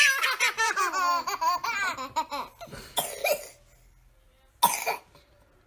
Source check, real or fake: real